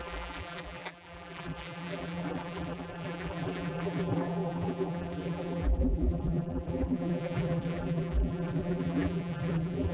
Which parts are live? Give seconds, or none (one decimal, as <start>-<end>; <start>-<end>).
none